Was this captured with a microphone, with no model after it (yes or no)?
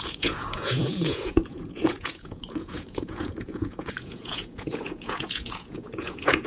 no